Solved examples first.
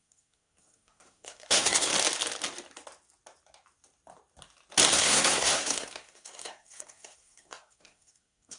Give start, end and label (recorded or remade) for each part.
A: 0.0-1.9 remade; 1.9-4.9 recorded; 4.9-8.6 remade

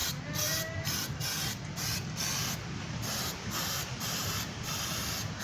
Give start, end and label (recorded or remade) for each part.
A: 0.0-5.4 recorded

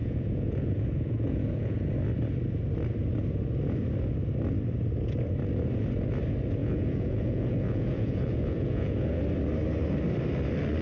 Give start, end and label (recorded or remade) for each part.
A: 0.0-1.9 remade; 1.9-6.6 recorded; 6.6-9.2 remade; 9.2-10.8 recorded

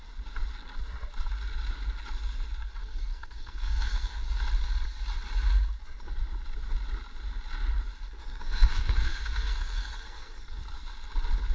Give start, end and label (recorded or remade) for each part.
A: 0.0-2.8 recorded; 2.8-4.4 remade; 4.4-8.2 recorded; 8.2-10.6 remade; 10.6-11.5 recorded

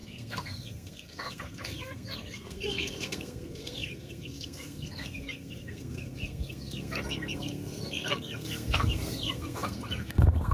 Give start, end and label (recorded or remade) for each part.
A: 0.0-10.5 remade

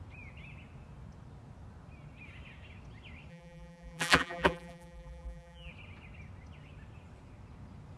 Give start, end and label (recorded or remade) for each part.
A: 0.0-3.3 recorded; 3.3-5.7 remade; 5.7-8.0 recorded

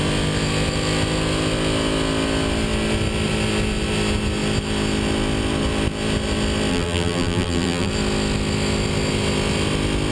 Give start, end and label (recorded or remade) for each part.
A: 0.0-6.7 recorded; 6.7-7.9 remade; 7.9-10.1 recorded

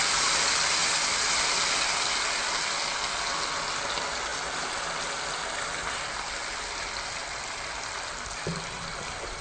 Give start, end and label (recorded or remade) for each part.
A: 0.0-9.4 recorded